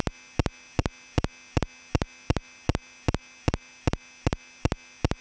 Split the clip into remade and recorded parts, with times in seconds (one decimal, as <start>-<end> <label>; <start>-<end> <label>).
0.0-5.2 recorded